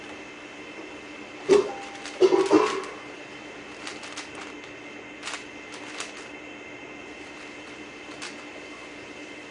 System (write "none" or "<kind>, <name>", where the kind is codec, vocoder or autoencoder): none